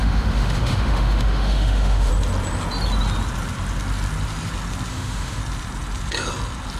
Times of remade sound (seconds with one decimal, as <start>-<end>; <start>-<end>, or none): 0.0-2.1; 4.9-5.4